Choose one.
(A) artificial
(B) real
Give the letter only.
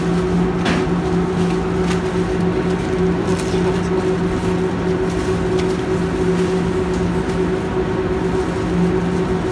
B